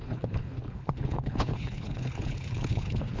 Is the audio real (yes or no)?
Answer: no